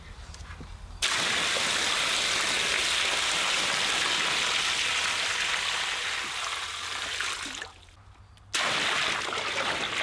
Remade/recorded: recorded